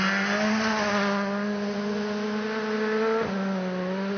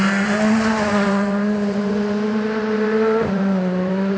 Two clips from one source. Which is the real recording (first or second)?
first